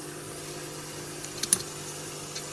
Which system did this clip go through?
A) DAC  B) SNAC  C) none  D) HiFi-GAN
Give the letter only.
C